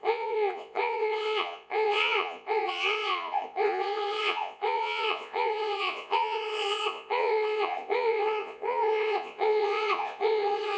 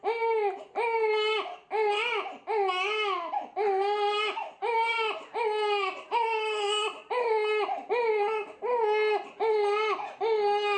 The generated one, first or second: first